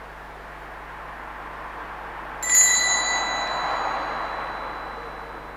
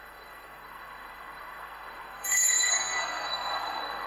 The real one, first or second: first